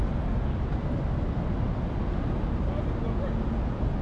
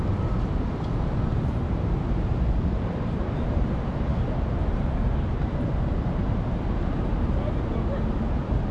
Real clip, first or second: first